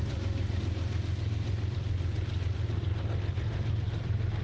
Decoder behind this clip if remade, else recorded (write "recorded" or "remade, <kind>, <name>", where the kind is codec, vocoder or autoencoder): remade, vocoder, BigVGAN v2